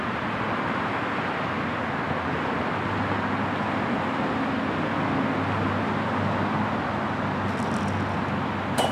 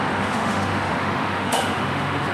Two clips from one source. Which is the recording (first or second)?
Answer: first